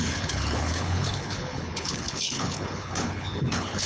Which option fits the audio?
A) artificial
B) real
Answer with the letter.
A